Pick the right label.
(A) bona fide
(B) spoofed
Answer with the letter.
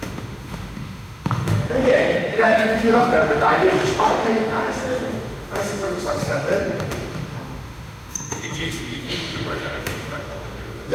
B